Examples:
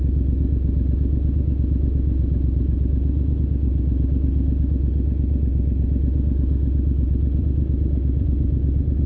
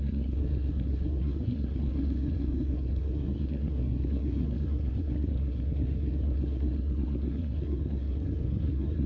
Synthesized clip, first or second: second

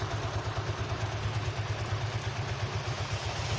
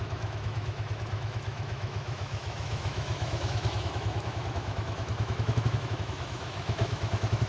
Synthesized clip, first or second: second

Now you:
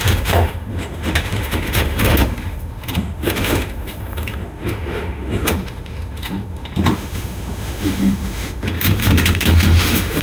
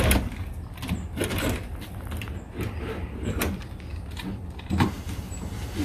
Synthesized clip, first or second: first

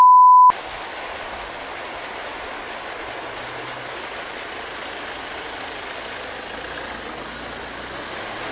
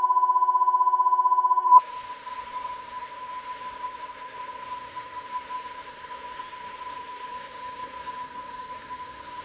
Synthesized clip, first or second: second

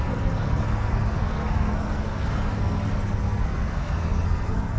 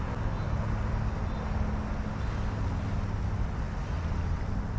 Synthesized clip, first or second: first